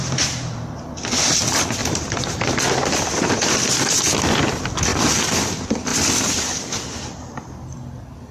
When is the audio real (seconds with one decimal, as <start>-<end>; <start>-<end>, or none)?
0.0-1.8; 2.6-8.3